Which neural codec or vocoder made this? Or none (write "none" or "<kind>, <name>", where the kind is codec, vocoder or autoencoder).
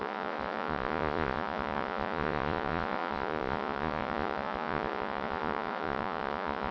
vocoder, Vocos